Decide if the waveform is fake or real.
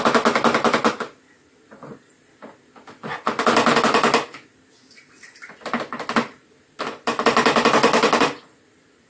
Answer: real